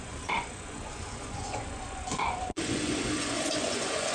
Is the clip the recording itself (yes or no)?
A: no